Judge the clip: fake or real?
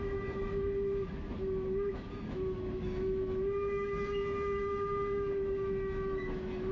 fake